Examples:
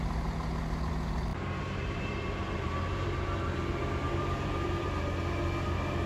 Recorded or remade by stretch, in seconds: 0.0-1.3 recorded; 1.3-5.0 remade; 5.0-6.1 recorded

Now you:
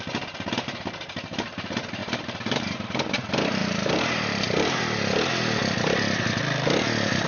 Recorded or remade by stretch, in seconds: 0.0-2.0 recorded; 2.0-2.6 remade; 2.6-3.6 recorded; 3.6-4.8 remade; 4.8-7.3 recorded

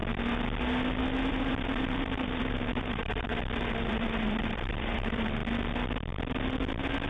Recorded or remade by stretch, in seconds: 0.0-1.3 recorded; 1.3-3.3 remade; 3.3-3.8 recorded; 3.8-5.4 remade; 5.4-7.1 recorded